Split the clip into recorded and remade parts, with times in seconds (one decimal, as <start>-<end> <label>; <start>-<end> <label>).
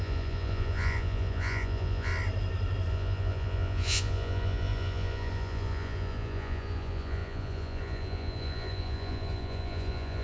0.0-2.1 remade; 2.1-2.9 recorded; 2.9-10.2 remade